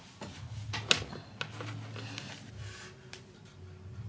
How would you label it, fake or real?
real